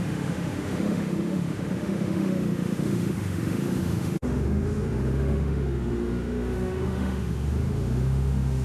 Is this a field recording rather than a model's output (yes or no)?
no